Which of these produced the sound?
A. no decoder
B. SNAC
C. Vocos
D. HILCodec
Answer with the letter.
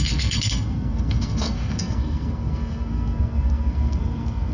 B